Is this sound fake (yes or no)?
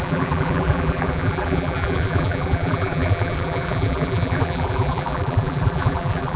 yes